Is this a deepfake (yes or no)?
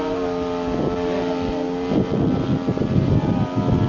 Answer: no